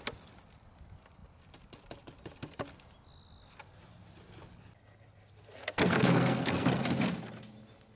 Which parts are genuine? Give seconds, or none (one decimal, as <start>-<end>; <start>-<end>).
0.0-5.6; 6.8-8.0